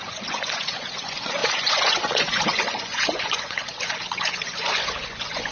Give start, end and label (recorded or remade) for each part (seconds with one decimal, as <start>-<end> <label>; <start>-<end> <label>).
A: 0.0-5.5 remade